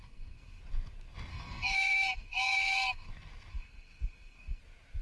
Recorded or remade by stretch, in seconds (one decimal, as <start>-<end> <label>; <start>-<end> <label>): 0.0-0.6 remade; 0.6-1.3 recorded; 1.3-3.1 remade; 3.1-3.5 recorded; 3.5-4.6 remade; 4.6-5.0 recorded